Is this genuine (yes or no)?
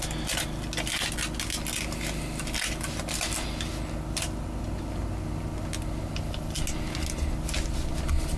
yes